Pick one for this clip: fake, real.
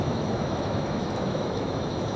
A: fake